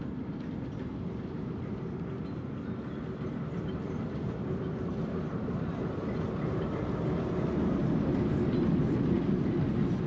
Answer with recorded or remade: recorded